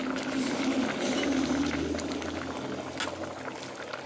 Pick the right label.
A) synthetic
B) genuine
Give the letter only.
B